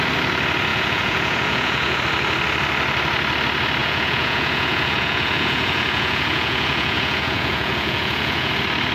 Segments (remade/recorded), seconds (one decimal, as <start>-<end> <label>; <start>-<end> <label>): 0.0-0.7 recorded; 0.7-2.0 remade; 2.0-3.8 recorded; 3.8-8.5 remade; 8.5-8.9 recorded